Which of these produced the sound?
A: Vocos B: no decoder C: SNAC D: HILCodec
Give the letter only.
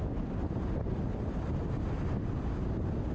B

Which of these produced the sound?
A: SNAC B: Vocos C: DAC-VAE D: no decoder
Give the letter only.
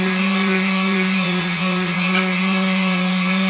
B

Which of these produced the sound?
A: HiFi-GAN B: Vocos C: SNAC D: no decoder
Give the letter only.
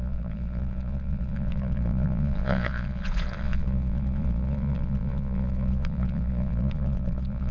B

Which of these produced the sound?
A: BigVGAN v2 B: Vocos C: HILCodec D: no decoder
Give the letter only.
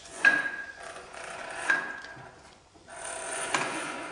B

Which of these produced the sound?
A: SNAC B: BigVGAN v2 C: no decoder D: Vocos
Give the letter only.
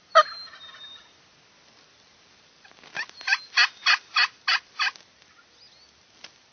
C